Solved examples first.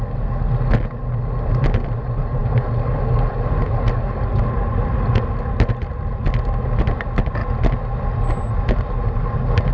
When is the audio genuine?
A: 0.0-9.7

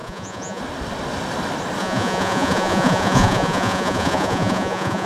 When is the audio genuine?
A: 0.6-1.8